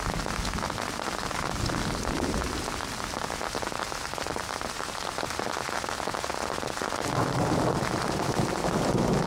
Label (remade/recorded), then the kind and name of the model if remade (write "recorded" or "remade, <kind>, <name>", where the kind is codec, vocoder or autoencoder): recorded